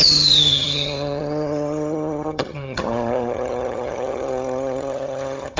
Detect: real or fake fake